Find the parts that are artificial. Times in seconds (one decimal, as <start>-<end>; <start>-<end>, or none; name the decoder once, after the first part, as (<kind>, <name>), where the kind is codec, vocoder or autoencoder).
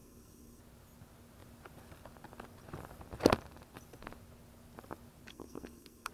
0.0-0.6 (codec, SNAC); 5.3-6.1